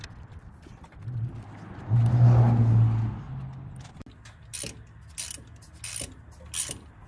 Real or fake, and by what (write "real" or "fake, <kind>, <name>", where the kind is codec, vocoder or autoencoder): real